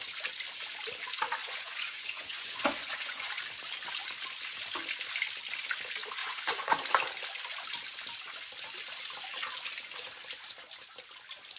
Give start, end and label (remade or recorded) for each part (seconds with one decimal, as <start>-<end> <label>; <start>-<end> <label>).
0.0-1.4 recorded; 1.4-3.3 remade; 3.3-6.2 recorded; 6.2-6.8 remade; 6.8-11.6 recorded